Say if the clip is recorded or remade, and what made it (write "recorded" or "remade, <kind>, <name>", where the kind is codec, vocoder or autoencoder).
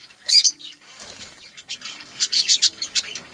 remade, codec, DAC